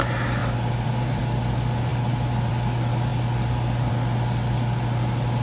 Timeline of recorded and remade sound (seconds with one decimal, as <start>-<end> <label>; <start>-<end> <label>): 0.0-0.4 recorded; 0.4-1.2 remade; 1.2-5.4 recorded